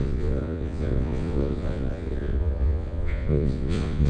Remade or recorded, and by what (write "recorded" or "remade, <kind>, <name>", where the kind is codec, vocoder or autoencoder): remade, vocoder, Vocos